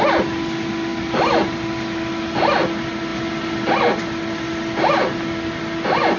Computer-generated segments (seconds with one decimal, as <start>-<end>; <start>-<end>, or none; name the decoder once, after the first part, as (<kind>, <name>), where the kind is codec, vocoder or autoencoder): none